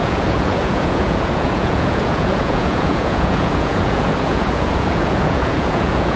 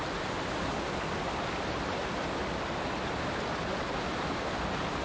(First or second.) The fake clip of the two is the first